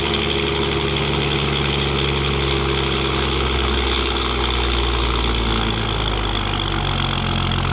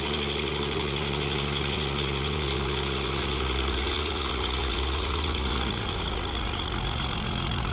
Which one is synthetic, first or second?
second